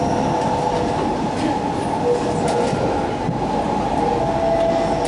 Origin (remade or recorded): recorded